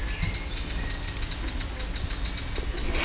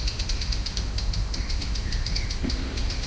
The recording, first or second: first